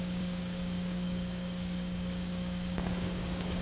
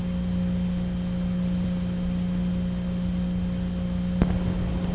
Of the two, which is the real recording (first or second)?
second